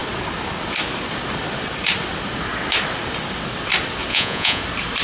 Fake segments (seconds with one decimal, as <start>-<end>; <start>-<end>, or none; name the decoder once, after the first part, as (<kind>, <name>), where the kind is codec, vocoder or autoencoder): 4.1-4.6 (vocoder, Vocos)